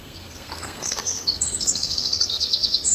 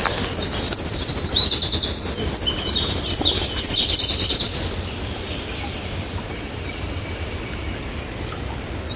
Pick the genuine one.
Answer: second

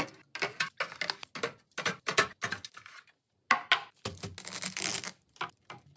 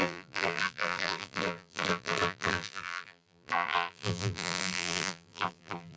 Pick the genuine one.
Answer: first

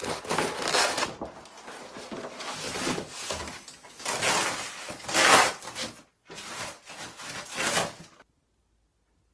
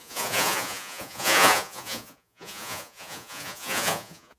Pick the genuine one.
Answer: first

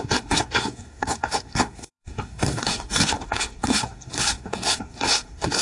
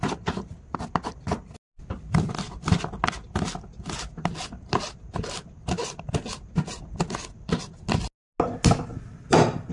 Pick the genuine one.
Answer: second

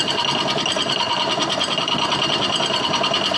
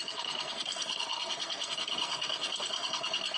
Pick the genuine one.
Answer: first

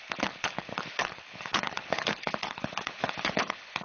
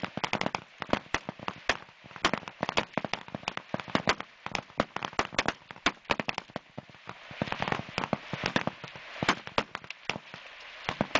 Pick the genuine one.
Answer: second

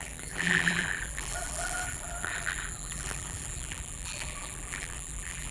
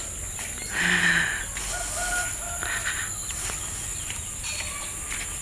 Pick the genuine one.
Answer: second